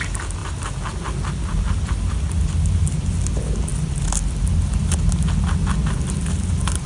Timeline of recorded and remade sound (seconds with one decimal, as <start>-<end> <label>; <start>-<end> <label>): 0.0-6.9 recorded